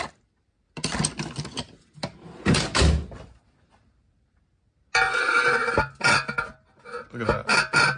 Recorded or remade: recorded